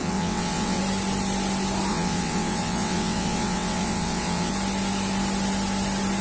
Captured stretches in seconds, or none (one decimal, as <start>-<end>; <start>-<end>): 0.8-1.9; 4.5-6.2